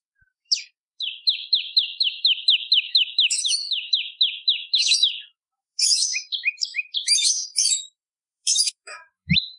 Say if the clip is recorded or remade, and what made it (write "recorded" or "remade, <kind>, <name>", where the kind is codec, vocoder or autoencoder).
remade, autoencoder, DAC-VAE